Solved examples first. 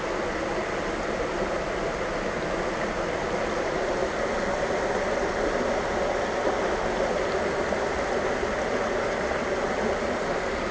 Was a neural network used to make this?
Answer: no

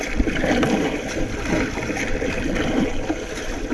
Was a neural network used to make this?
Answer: no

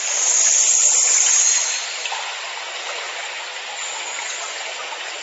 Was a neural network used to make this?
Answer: no